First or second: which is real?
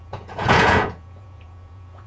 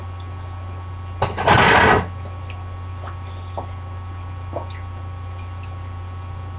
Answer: second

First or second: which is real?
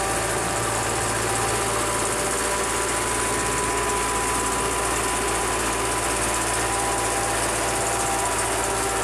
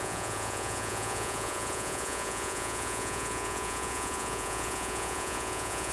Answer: first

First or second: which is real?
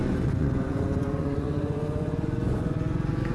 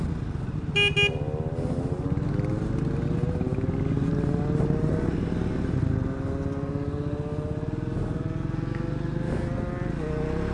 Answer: second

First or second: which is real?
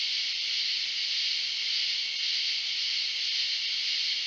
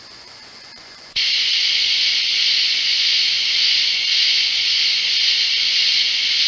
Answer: first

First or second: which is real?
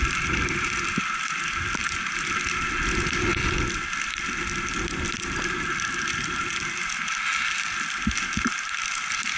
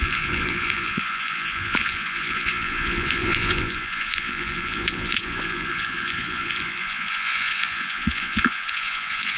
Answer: first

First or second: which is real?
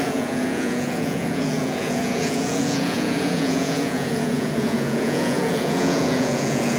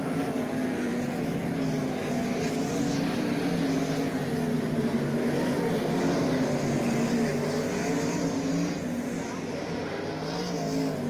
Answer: second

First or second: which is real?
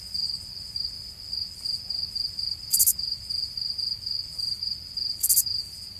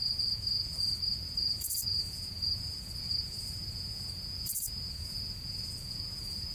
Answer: first